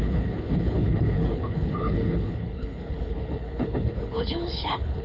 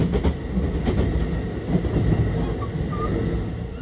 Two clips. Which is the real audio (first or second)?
second